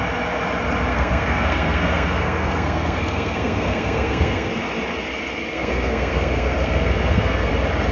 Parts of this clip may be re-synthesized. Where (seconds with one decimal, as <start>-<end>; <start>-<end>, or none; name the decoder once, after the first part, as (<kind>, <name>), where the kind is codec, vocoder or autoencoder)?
0.9-4.5 (codec, SNAC); 5.5-7.5